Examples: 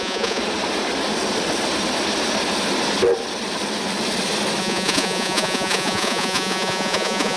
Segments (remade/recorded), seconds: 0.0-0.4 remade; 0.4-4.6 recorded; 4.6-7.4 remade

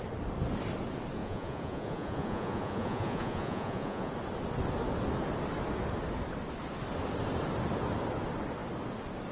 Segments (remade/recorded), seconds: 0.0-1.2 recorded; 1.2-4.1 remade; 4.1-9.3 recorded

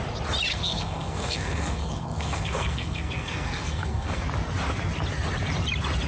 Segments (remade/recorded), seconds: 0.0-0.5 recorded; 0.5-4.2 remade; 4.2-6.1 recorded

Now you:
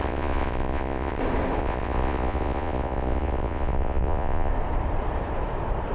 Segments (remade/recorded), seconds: 0.0-1.2 remade; 1.2-1.6 recorded; 1.6-4.5 remade; 4.5-5.9 recorded

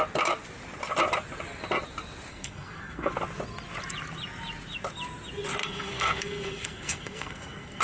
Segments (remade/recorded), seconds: 0.0-2.3 recorded; 2.3-3.1 remade; 3.1-5.6 recorded; 5.6-7.8 remade